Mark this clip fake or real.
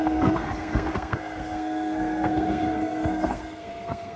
fake